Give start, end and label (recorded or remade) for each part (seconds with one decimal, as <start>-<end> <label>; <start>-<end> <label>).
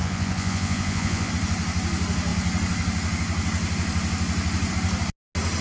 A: 0.0-1.3 remade; 1.3-5.6 recorded